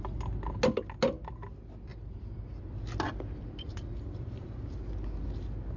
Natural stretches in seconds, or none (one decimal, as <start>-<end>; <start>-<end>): 0.0-1.9; 4.8-5.8